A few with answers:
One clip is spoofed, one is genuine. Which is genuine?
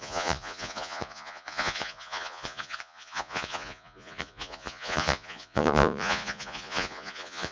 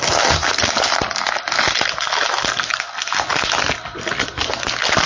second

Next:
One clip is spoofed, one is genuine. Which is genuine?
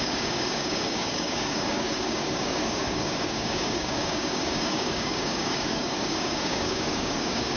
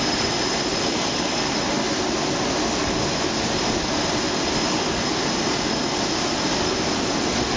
second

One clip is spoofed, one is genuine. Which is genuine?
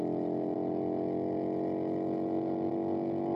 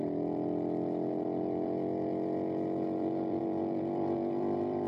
first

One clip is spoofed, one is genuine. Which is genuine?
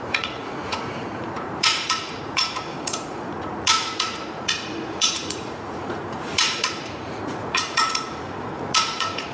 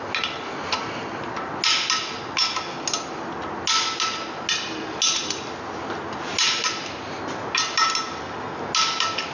second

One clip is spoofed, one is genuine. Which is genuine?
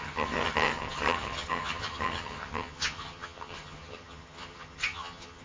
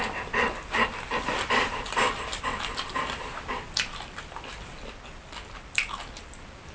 second